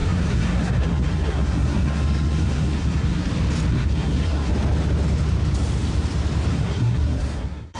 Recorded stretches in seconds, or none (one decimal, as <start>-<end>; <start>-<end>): 3.3-3.7; 4.5-6.5